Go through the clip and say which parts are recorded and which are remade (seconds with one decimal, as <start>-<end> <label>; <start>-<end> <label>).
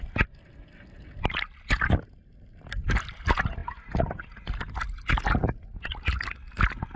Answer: 0.0-7.0 recorded